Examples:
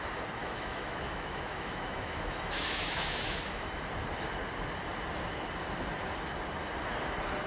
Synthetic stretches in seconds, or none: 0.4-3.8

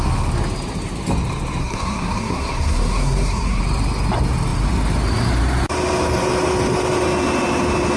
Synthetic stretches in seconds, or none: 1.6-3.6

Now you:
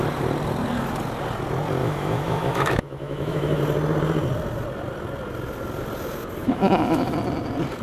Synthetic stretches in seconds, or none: 1.8-3.6; 6.4-7.1

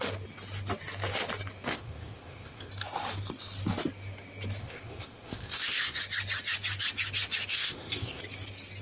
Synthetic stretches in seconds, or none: 1.7-2.7; 4.6-6.0; 7.5-8.2

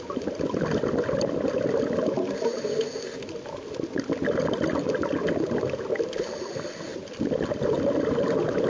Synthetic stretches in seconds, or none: none

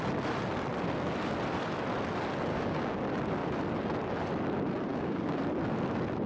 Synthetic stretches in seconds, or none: 2.5-3.0; 4.9-5.4